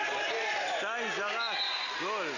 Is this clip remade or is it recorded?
recorded